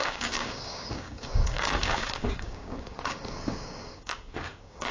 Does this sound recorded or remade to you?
remade